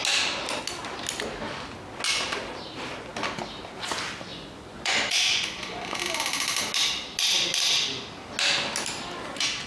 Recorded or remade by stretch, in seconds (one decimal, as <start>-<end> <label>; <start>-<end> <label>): 0.0-4.3 recorded; 4.3-6.0 remade; 6.0-9.7 recorded